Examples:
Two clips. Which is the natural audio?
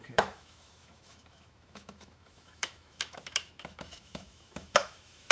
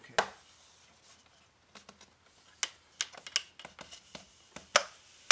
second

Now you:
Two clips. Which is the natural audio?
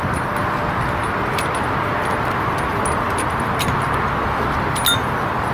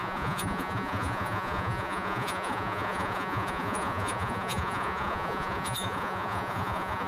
first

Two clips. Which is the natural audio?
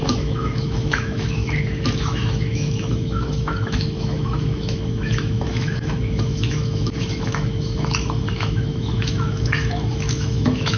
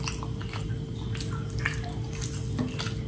second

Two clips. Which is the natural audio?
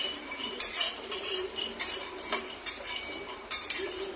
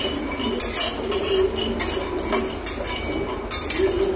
second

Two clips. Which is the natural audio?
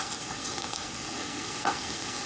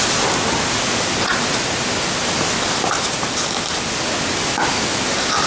second